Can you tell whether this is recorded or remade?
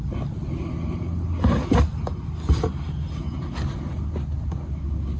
recorded